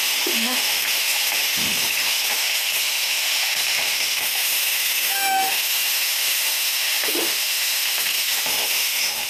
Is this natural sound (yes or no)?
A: no